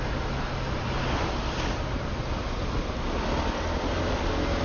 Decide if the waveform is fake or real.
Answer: real